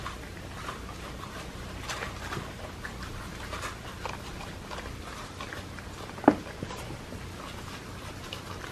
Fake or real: real